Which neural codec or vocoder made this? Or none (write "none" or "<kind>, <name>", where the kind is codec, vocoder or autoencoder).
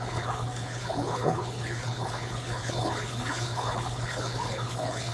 codec, HILCodec